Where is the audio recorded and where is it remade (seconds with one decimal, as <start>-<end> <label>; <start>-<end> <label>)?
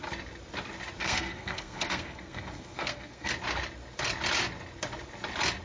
0.0-1.0 recorded; 1.0-3.3 remade; 3.3-5.6 recorded